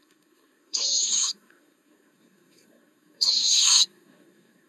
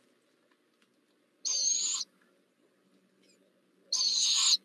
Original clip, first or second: second